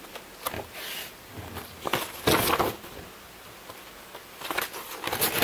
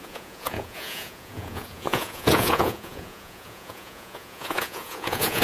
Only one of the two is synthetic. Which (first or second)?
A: second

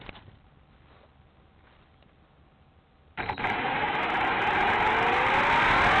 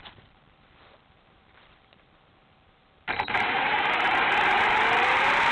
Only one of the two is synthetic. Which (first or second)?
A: second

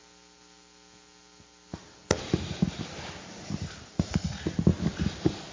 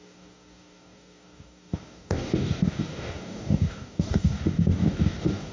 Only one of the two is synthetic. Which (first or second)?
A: second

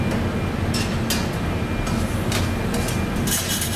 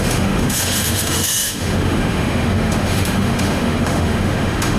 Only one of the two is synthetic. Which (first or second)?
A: second